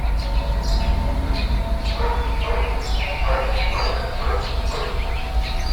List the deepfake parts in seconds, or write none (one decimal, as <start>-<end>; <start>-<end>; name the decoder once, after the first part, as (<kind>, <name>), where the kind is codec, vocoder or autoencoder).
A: 3.2-4.4 (codec, DAC)